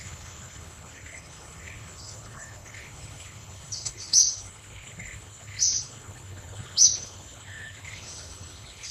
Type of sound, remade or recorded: remade